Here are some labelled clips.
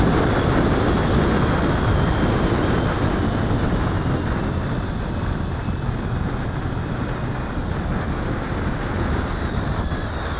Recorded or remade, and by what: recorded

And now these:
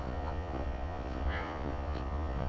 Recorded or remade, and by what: remade, vocoder, Vocos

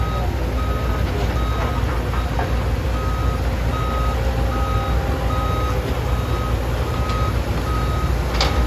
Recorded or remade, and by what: recorded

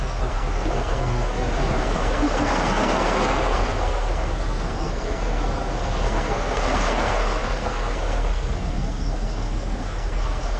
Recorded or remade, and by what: remade, codec, SNAC